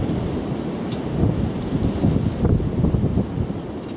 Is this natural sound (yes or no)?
yes